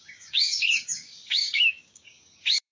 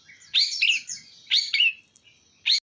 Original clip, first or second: second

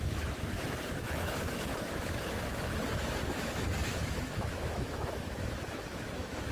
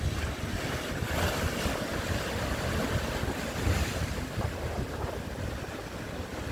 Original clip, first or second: second